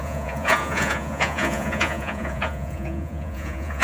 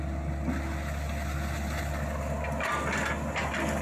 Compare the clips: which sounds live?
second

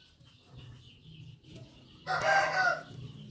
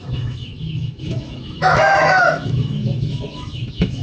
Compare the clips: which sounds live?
first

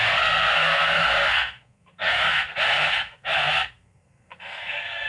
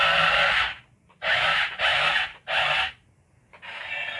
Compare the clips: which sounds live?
second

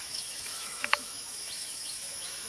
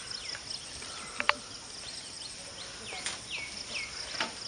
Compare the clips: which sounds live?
second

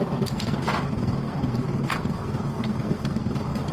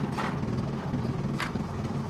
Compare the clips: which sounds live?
second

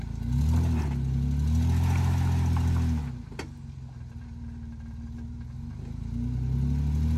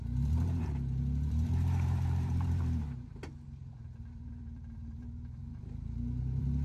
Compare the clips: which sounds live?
first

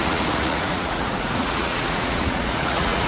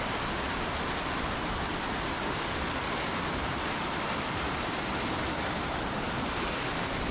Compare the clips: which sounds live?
second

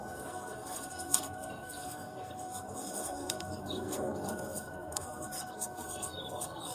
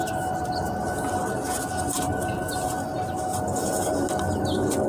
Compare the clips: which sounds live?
second